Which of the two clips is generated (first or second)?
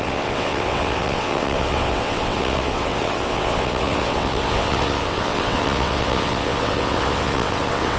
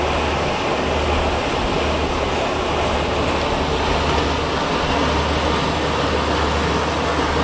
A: first